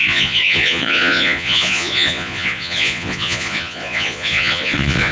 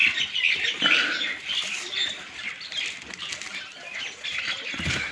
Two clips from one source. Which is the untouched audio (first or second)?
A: second